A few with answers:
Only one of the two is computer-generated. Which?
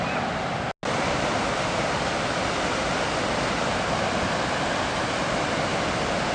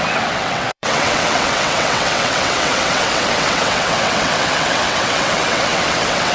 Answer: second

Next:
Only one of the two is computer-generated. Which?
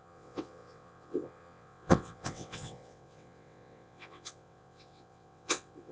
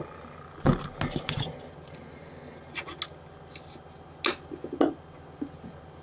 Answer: first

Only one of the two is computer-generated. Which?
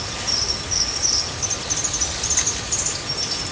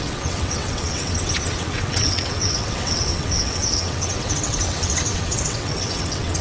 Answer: second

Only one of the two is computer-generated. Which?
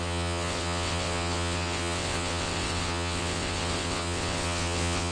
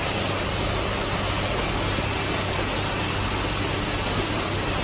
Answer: first